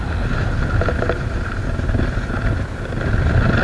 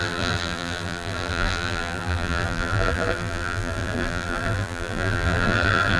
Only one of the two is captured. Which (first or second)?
first